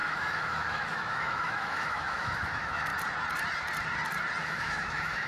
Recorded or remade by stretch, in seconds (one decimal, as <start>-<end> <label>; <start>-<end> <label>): 0.0-2.9 remade; 2.9-4.4 recorded; 4.4-5.3 remade